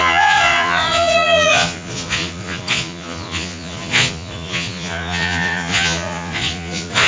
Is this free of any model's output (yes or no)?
no